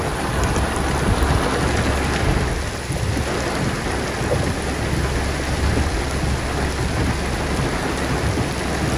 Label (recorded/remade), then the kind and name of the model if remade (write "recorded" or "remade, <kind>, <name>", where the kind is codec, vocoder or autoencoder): recorded